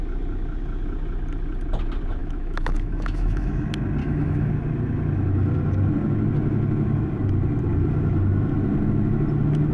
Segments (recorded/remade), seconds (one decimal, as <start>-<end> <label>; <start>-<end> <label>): 0.0-2.2 recorded; 2.2-3.5 remade; 3.5-4.0 recorded; 4.0-4.5 remade; 4.5-9.7 recorded